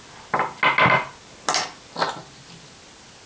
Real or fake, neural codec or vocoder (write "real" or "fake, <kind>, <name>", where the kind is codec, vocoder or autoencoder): real